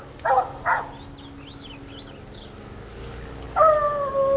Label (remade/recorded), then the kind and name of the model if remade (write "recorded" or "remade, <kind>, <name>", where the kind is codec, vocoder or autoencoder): recorded